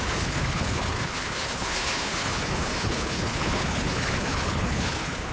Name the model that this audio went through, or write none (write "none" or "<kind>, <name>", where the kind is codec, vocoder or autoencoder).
codec, HILCodec